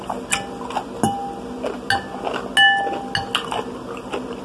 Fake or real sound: real